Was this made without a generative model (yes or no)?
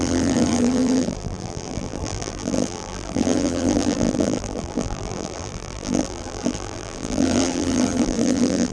no